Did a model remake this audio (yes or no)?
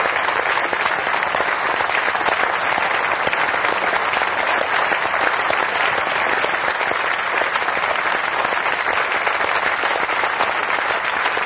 no